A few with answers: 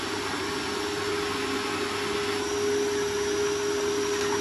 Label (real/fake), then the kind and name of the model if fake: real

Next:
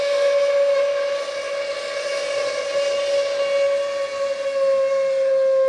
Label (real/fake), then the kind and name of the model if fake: real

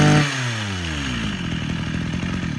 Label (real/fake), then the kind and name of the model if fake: real